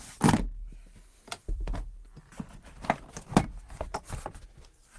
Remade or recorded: recorded